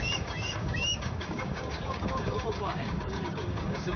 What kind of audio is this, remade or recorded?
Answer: remade